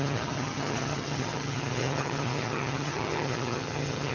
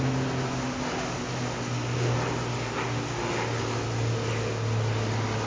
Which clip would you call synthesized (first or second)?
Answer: first